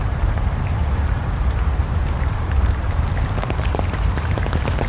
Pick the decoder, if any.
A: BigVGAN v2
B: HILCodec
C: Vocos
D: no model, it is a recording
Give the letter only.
A